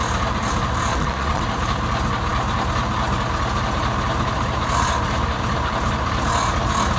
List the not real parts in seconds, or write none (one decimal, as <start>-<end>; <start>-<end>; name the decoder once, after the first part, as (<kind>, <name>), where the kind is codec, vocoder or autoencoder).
0.9-1.4 (vocoder, Vocos)